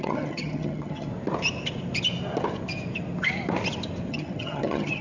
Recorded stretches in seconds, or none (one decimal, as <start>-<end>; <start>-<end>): 1.1-4.1